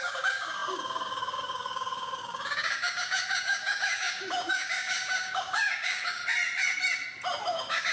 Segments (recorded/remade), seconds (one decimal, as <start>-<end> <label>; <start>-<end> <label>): 0.0-6.2 remade; 6.2-7.4 recorded; 7.4-7.9 remade